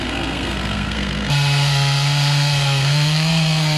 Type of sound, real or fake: fake